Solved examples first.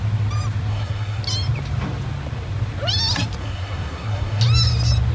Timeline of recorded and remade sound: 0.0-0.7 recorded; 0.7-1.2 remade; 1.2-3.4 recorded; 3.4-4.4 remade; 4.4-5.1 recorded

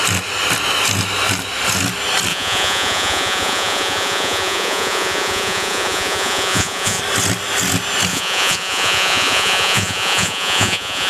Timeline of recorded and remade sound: 0.0-2.3 recorded; 2.3-7.0 remade; 7.0-8.1 recorded; 8.1-11.1 remade

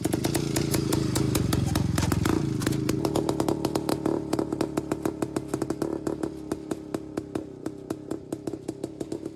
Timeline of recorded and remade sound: 0.0-9.4 recorded

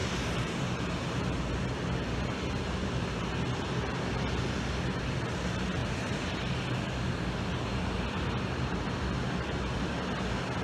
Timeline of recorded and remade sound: 0.0-1.4 remade; 1.4-5.8 recorded; 5.8-6.4 remade; 6.4-10.6 recorded

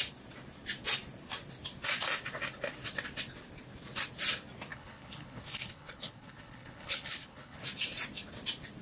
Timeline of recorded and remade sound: 0.0-4.7 recorded; 4.7-7.6 remade; 7.6-8.8 recorded